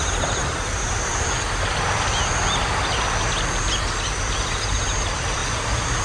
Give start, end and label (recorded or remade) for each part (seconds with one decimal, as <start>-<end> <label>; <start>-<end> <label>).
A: 0.0-1.1 remade; 1.1-4.7 recorded; 4.7-5.4 remade; 5.4-6.0 recorded